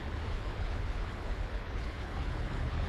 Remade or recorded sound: remade